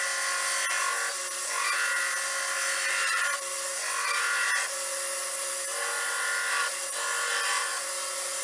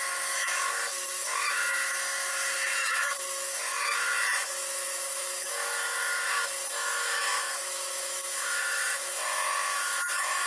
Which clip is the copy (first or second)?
second